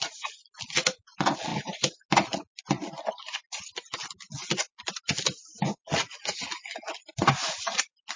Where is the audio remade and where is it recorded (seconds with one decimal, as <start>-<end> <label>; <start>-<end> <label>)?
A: 0.0-1.5 recorded; 1.5-2.0 remade; 2.0-8.2 recorded